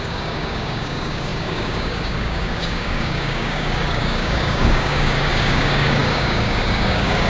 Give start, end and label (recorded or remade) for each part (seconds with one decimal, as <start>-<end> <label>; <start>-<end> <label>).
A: 0.0-7.3 remade